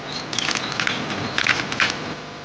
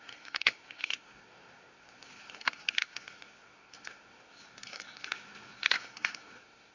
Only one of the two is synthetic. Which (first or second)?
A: second